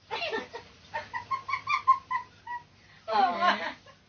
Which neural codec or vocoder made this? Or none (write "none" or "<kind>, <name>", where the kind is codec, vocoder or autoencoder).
none